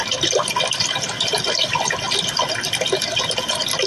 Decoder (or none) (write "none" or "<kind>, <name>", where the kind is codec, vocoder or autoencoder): none